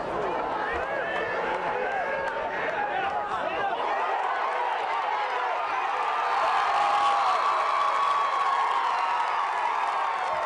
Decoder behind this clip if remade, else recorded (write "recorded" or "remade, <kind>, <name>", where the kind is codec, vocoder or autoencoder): recorded